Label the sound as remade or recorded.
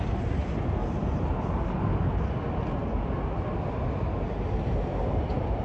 recorded